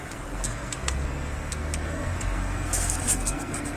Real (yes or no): no